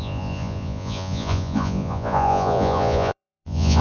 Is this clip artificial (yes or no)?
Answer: yes